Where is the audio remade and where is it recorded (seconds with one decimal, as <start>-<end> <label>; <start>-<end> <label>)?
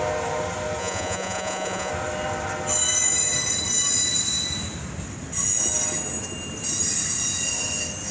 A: 0.0-0.8 recorded; 0.8-1.9 remade; 1.9-8.1 recorded